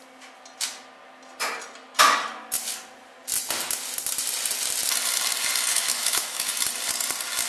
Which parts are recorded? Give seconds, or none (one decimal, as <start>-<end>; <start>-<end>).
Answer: 0.0-5.7; 6.5-7.5